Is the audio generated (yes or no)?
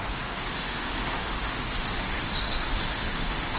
yes